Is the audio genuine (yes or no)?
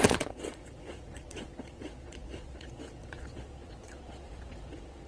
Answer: no